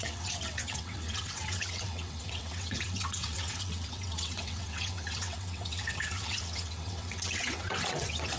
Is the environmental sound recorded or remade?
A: remade